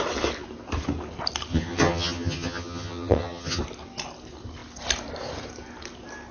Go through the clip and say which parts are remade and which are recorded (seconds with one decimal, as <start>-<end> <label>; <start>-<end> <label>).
0.0-1.5 recorded; 1.5-3.6 remade; 3.6-6.3 recorded